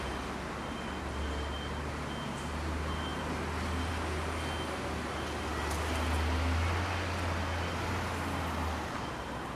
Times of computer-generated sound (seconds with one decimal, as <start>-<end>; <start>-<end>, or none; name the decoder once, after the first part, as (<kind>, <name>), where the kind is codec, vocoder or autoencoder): none